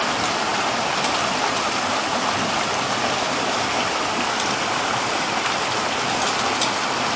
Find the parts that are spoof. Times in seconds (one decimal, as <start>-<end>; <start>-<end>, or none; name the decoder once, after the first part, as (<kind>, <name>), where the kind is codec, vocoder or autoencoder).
0.5-3.9 (vocoder, BigVGAN v2)